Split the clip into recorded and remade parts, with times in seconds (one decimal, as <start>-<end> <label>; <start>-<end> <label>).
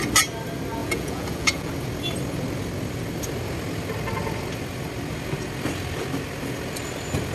0.0-0.8 recorded; 0.8-1.7 remade; 1.7-7.3 recorded